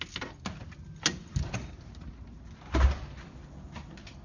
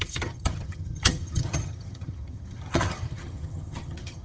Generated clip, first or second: second